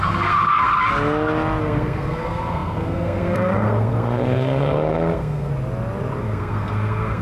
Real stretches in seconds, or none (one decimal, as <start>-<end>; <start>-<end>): 0.7-1.6; 5.5-6.2